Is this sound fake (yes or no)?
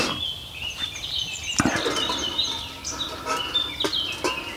no